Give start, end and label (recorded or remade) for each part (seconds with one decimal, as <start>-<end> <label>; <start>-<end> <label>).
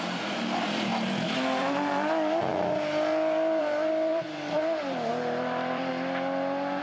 0.0-0.9 remade; 0.9-1.6 recorded; 1.6-2.5 remade; 2.5-3.6 recorded; 3.6-5.9 remade; 5.9-6.8 recorded